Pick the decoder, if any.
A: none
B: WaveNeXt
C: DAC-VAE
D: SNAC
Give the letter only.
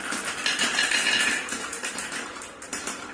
A